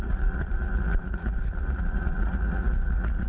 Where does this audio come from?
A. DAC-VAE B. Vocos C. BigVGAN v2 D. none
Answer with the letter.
B